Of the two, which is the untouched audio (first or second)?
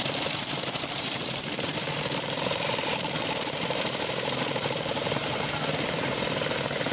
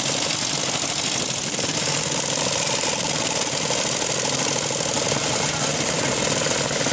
second